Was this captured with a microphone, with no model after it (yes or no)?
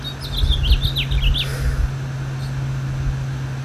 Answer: yes